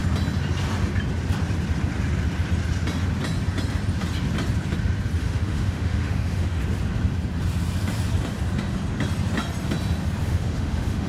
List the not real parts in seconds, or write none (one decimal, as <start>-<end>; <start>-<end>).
5.2-6.6; 10.2-11.1